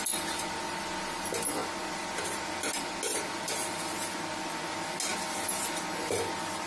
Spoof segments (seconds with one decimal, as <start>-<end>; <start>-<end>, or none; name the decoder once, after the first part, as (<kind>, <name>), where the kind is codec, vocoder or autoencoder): 3.1-3.7 (vocoder, BigVGAN v2)